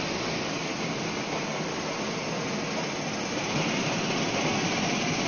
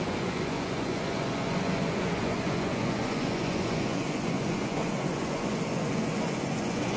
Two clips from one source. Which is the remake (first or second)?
second